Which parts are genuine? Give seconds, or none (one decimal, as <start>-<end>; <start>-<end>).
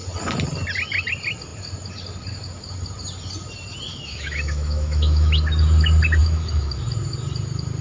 0.0-3.9; 5.4-6.2; 6.8-7.8